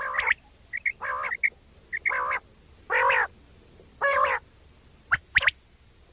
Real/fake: real